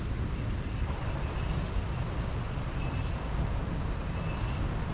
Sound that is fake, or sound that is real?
real